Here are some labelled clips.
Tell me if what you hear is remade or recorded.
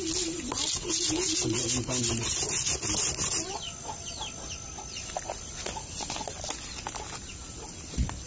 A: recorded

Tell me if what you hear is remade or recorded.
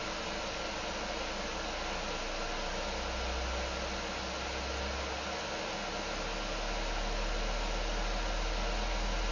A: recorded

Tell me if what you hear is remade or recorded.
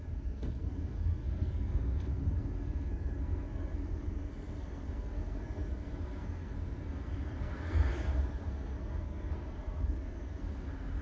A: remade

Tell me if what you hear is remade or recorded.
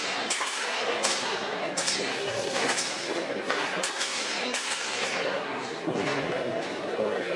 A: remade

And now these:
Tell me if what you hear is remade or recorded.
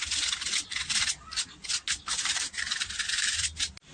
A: recorded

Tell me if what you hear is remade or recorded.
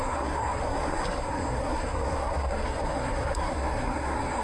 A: remade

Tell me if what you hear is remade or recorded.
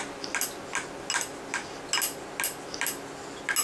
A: recorded